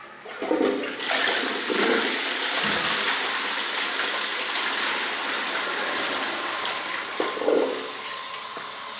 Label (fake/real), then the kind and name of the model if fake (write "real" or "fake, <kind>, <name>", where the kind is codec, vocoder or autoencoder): real